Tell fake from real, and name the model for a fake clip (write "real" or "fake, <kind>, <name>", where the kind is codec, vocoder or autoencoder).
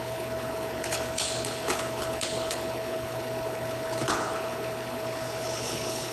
fake, codec, HILCodec